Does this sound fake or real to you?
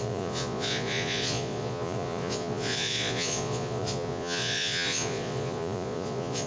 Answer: fake